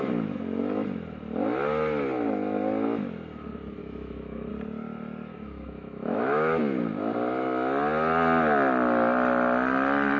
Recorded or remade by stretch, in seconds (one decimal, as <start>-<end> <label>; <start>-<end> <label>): 0.0-3.8 recorded; 3.8-4.5 remade; 4.5-5.3 recorded; 5.3-6.6 remade; 6.6-10.2 recorded